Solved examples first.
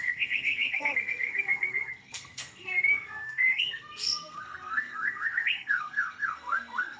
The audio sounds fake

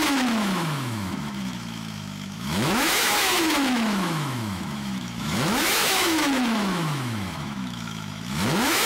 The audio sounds fake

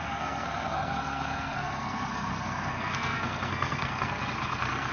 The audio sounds fake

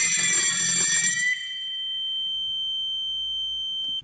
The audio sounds real